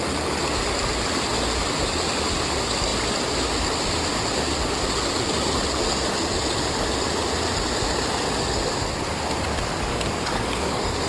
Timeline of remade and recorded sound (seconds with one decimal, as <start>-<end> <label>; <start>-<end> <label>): 0.0-9.9 recorded; 9.9-11.1 remade